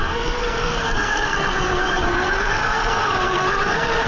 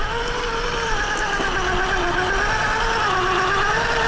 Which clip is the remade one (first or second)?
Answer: first